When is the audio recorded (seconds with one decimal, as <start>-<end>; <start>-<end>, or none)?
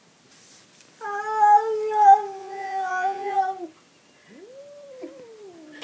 0.0-2.4; 3.4-5.8